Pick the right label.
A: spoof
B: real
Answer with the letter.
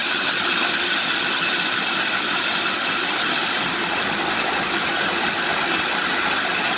B